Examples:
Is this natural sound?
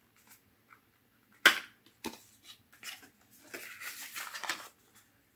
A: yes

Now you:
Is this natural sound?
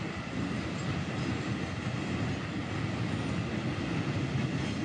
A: yes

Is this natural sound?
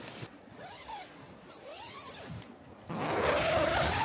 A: yes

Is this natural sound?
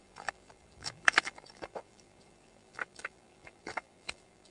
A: no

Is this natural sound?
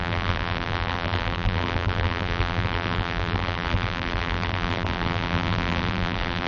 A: no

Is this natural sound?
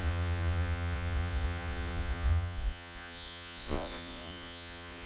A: no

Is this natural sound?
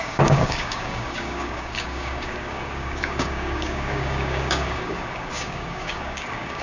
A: no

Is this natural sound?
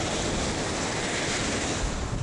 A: yes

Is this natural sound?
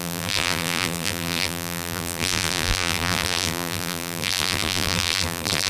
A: no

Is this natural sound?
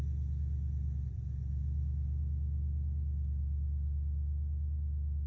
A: yes